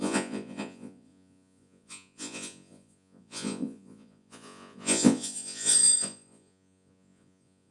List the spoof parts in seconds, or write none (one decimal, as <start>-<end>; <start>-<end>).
0.0-7.7